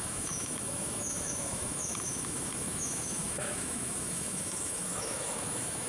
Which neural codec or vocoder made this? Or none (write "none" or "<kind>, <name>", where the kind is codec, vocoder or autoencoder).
autoencoder, DAC-VAE